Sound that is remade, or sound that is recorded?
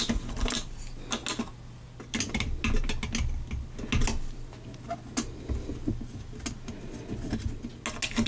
recorded